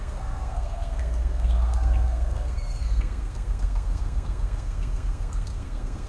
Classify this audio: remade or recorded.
remade